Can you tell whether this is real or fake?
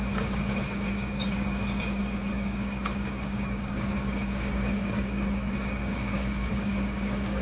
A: fake